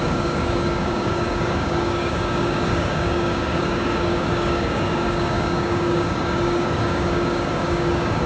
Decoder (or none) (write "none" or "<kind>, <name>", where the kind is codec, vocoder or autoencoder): codec, DAC